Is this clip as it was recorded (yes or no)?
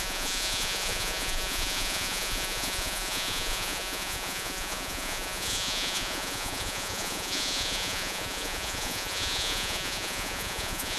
no